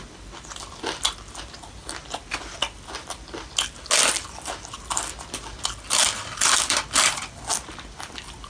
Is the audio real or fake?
real